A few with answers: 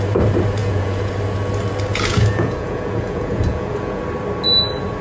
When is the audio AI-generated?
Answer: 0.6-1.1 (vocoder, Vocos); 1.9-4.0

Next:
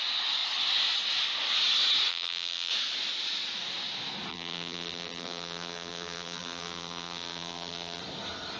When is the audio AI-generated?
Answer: 2.1-2.7 (vocoder, BigVGAN v2); 4.3-8.0

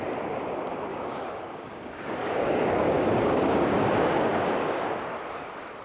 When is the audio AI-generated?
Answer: 0.9-4.4 (codec, DAC)

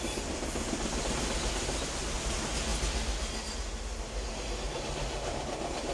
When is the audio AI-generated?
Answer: none